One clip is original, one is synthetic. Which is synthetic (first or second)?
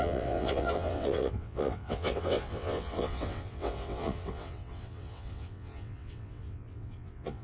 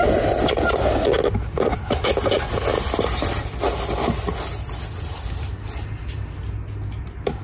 first